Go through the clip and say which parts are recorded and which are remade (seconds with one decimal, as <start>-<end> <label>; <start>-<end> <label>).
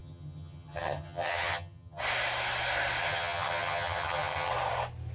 0.0-2.0 remade; 2.0-3.0 recorded; 3.0-4.5 remade; 4.5-5.1 recorded